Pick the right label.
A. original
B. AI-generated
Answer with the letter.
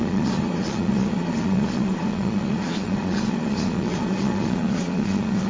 B